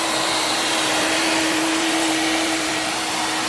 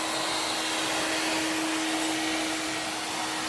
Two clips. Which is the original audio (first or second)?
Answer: second